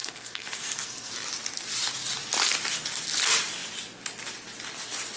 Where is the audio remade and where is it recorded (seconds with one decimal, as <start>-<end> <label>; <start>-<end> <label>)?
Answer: 0.0-1.1 remade; 1.1-5.2 recorded

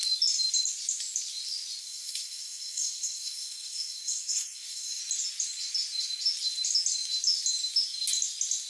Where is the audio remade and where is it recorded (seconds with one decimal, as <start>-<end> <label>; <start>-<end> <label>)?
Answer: 0.0-1.8 recorded; 1.8-5.0 remade; 5.0-8.7 recorded

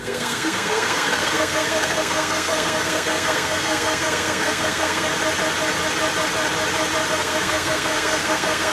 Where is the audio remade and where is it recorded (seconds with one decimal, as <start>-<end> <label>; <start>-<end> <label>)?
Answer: 0.0-5.1 remade; 5.1-7.1 recorded; 7.1-8.7 remade

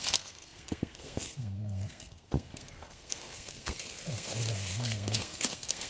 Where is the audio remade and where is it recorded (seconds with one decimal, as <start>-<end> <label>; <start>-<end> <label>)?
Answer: 0.0-5.9 remade

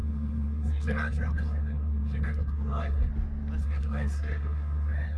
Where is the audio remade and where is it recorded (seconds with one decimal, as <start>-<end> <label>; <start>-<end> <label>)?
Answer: 0.0-3.1 remade; 3.1-3.6 recorded; 3.6-5.2 remade

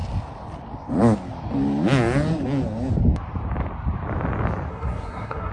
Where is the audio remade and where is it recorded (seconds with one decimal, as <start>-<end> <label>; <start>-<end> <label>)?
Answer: 0.0-4.7 recorded; 4.7-5.5 remade